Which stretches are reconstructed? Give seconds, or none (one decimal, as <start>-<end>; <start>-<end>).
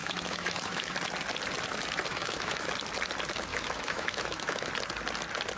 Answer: 0.0-0.9; 2.1-2.7; 3.5-4.7